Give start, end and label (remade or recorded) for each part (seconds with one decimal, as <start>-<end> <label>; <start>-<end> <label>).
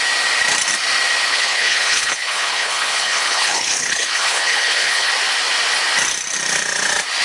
0.0-1.3 recorded; 1.3-5.1 remade; 5.1-7.2 recorded